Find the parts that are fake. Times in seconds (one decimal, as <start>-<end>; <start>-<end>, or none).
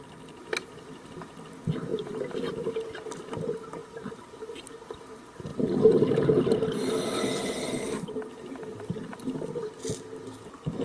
none